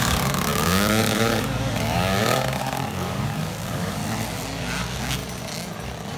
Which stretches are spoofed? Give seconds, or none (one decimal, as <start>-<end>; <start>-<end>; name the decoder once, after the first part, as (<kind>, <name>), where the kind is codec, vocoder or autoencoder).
0.0-4.0 (codec, DAC); 4.8-5.2